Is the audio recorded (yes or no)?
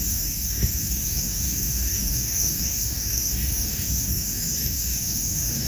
no